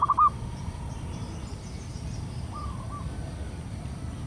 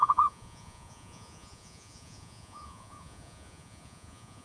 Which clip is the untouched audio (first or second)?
first